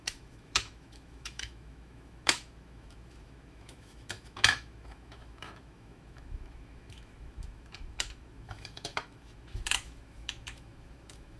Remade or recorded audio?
remade